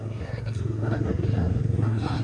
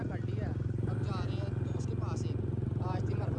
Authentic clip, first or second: second